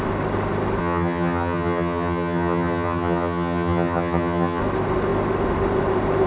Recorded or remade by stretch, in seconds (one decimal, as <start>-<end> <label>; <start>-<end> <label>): 0.0-0.8 recorded; 0.8-4.6 remade; 4.6-6.3 recorded